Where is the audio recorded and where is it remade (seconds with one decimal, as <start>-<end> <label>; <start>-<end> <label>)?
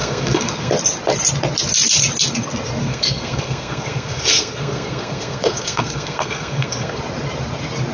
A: 0.0-0.7 remade; 0.7-2.8 recorded; 2.8-7.0 remade; 7.0-7.9 recorded